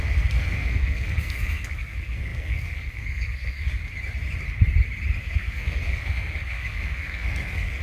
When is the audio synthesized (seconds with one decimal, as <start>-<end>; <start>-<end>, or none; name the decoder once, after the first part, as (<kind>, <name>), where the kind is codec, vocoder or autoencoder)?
0.0-3.7 (codec, SNAC); 5.2-7.8

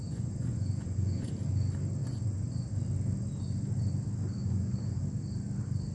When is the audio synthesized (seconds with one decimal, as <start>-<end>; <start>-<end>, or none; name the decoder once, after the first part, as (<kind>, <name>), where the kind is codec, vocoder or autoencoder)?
0.0-1.3 (vocoder, Vocos); 2.0-2.7; 4.4-5.0

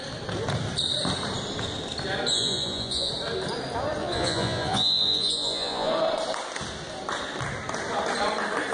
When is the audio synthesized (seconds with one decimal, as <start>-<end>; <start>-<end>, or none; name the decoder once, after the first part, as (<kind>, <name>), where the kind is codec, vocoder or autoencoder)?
2.3-3.1 (vocoder, Vocos); 4.0-5.9

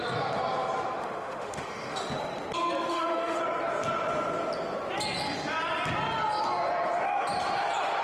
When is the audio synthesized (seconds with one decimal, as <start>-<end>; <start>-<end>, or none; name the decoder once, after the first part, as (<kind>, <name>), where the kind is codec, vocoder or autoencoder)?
1.0-2.1 (autoencoder, DAC-VAE); 2.9-3.4

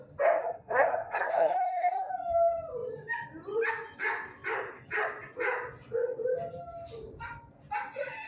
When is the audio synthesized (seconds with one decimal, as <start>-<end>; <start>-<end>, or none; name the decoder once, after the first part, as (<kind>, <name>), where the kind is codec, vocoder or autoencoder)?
0.4-2.1 (codec, SNAC)

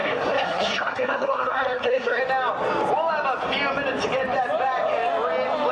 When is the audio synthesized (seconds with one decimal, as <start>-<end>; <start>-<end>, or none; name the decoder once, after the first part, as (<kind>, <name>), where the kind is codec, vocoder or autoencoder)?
0.0-2.2 (codec, SNAC)

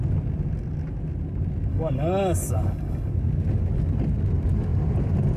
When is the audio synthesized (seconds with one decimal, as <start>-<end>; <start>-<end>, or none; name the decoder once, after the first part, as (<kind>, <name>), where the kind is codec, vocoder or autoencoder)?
1.7-3.1 (codec, DAC)

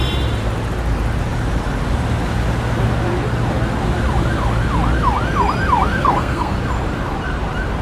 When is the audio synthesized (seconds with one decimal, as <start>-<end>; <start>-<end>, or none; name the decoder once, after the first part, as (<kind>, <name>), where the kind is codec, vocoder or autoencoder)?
6.0-6.5 (codec, SNAC)